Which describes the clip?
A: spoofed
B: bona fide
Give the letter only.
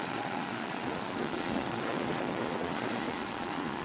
A